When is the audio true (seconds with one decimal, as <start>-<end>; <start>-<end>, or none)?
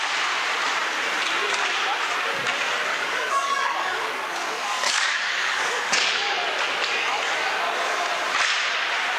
0.0-2.9; 7.2-9.2